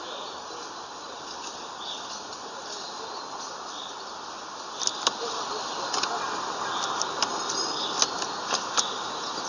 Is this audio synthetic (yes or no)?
no